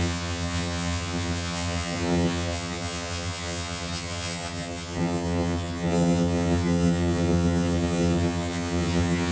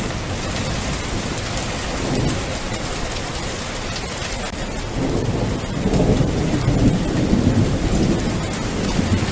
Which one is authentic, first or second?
second